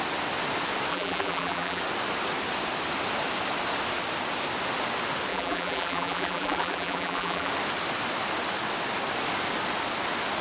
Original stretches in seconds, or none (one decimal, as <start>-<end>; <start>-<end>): 0.0-0.9; 1.8-5.3; 7.5-10.4